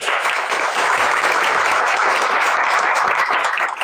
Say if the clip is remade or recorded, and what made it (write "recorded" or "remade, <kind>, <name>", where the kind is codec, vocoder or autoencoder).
remade, autoencoder, DAC-VAE